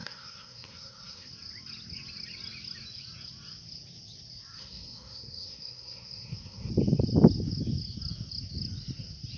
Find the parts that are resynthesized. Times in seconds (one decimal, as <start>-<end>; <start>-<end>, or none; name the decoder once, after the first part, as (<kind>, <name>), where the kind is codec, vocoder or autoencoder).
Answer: 0.0-1.3 (codec, SNAC); 4.6-6.7